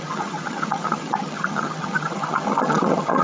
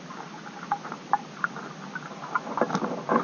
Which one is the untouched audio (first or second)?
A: second